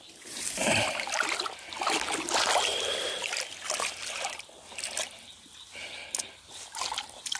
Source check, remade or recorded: recorded